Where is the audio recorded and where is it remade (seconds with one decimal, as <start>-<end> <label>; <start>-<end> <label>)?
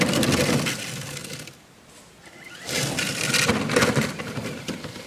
0.0-5.1 remade